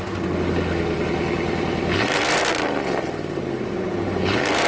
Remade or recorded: recorded